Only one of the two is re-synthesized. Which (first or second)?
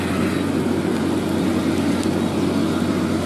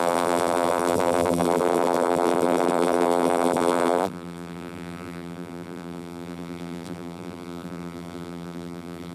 second